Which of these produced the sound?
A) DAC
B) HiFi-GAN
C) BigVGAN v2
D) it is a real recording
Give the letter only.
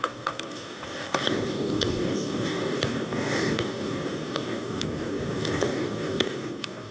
A